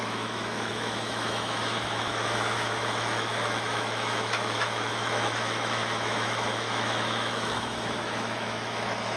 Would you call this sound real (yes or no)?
no